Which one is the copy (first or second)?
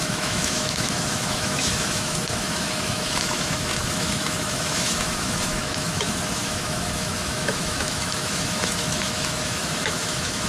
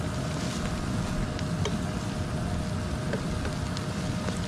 first